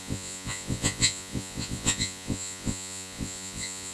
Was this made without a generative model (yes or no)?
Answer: no